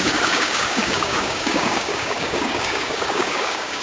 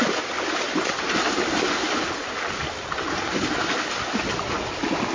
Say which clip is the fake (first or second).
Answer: first